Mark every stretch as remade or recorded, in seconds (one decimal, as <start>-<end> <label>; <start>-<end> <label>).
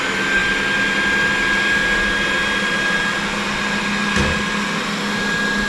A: 0.0-5.7 recorded